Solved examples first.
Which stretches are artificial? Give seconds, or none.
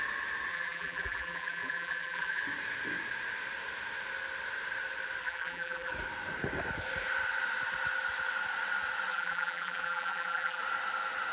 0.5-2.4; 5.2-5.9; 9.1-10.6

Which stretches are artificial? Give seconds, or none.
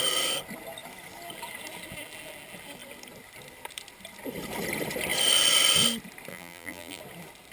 6.3-7.0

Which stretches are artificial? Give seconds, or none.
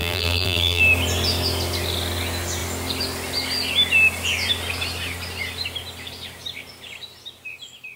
0.0-0.8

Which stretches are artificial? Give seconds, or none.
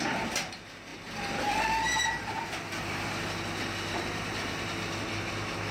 none